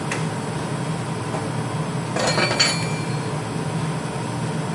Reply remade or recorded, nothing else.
recorded